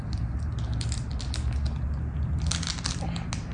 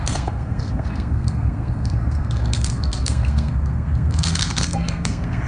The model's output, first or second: second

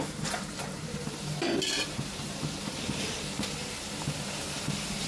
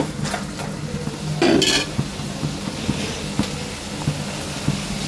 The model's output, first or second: first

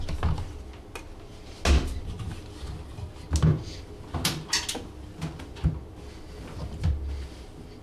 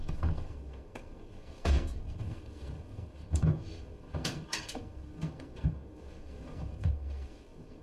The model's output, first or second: second